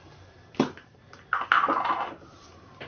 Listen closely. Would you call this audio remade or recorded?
recorded